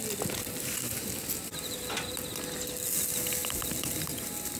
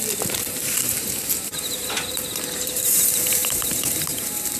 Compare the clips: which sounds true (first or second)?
first